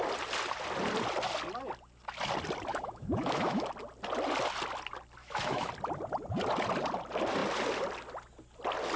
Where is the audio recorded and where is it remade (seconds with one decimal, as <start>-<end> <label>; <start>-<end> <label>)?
0.0-2.7 recorded; 2.7-3.7 remade; 3.7-5.2 recorded; 5.2-5.7 remade; 5.7-9.0 recorded